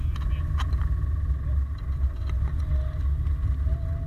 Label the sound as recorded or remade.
recorded